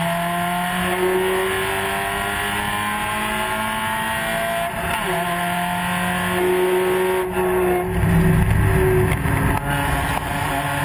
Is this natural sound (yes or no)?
yes